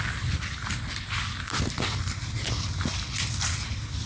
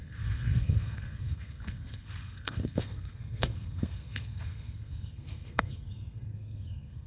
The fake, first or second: second